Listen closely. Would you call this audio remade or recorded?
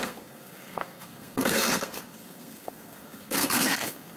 remade